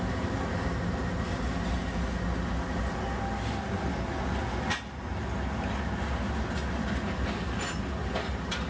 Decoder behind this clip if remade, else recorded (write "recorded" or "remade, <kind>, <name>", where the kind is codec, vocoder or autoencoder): recorded